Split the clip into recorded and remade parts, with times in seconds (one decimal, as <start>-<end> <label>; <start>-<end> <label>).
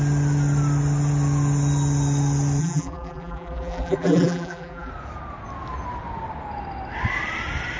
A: 0.0-2.6 recorded; 2.6-4.9 remade; 4.9-7.8 recorded